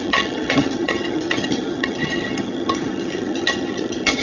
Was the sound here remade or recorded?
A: remade